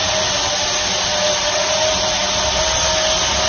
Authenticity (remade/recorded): recorded